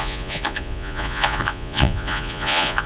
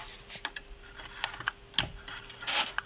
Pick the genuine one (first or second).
second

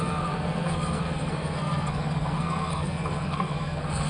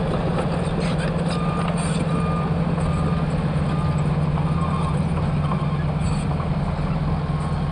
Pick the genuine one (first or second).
second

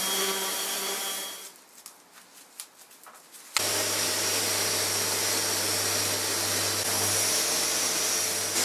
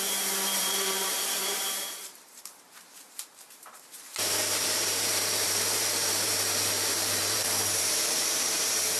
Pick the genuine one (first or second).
first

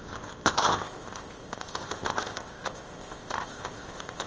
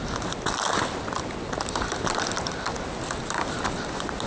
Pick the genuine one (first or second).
second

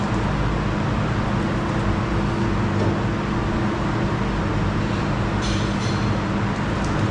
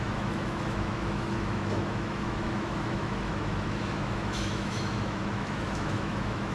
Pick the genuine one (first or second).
first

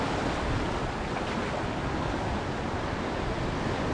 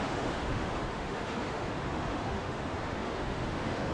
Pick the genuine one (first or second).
first